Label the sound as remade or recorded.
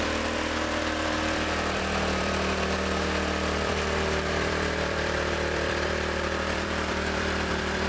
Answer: remade